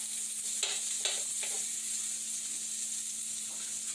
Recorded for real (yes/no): yes